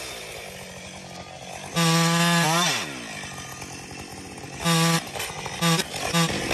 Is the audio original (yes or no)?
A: yes